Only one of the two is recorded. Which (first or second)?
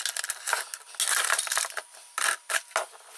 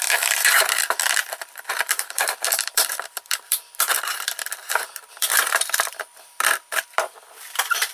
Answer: first